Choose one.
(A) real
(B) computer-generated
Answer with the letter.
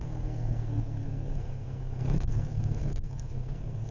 B